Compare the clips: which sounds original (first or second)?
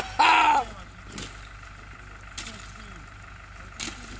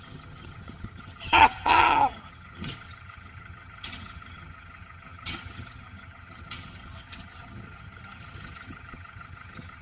first